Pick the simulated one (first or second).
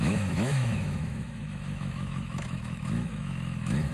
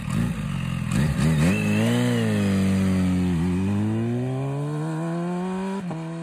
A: first